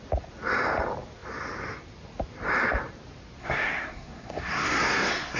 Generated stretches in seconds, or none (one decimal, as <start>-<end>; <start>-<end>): 3.4-5.4